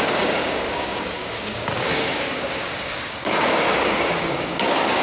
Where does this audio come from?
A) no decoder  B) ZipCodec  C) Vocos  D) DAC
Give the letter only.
D